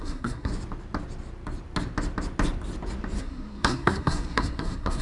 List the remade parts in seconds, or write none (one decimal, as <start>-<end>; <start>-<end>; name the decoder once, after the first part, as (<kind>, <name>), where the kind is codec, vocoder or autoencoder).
0.0-0.5 (codec, SNAC); 3.2-5.0